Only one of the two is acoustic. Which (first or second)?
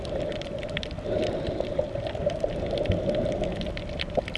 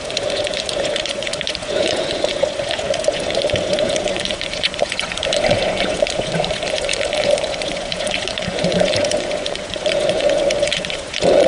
first